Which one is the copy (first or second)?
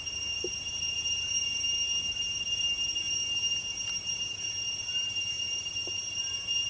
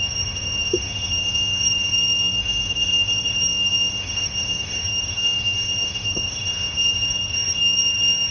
second